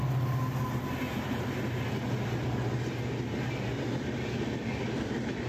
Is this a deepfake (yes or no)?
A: no